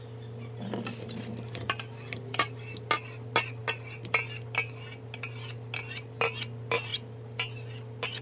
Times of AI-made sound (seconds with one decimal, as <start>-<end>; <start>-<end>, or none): none